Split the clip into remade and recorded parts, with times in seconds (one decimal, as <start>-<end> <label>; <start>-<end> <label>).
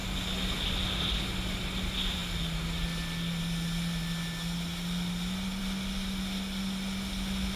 0.0-7.6 recorded